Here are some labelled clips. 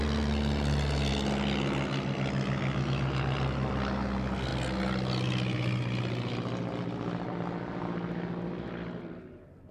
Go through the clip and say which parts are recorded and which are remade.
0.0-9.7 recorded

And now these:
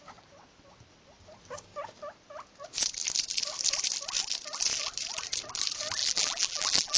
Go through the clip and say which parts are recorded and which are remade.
0.0-6.0 recorded; 6.0-7.0 remade

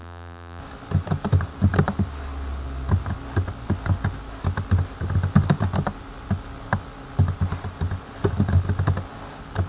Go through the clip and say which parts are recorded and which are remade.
0.0-0.6 remade; 0.6-9.7 recorded

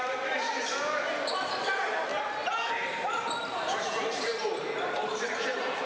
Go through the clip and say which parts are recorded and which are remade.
0.0-2.1 recorded; 2.1-5.9 remade

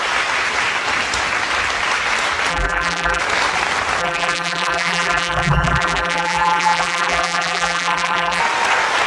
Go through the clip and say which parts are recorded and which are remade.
0.0-2.5 recorded; 2.5-3.2 remade; 3.2-4.0 recorded; 4.0-8.4 remade; 8.4-9.1 recorded

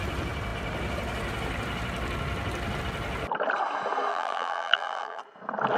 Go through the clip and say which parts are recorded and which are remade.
0.0-4.1 recorded; 4.1-5.2 remade; 5.2-5.8 recorded